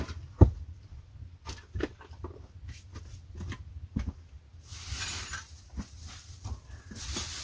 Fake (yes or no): no